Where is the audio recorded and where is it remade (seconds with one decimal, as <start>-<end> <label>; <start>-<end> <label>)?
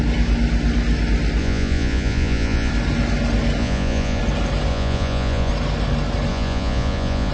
0.0-1.4 recorded; 1.4-2.7 remade; 2.7-3.6 recorded; 3.6-4.2 remade; 4.2-4.7 recorded; 4.7-5.5 remade; 5.5-6.3 recorded; 6.3-7.3 remade